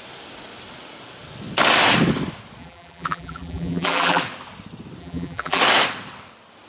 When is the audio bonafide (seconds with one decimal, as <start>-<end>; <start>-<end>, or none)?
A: 0.0-2.6; 4.2-5.0; 5.6-6.7